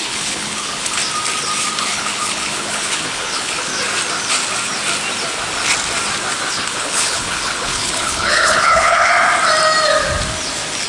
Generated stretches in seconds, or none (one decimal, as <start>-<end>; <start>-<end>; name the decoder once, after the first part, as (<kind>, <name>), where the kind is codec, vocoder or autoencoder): 0.0-1.0 (codec, HILCodec); 1.8-3.7; 6.5-9.1